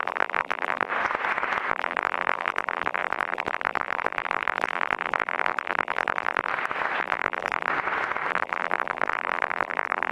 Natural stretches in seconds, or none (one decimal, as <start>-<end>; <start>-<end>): 0.9-1.7; 6.5-7.0; 7.7-8.3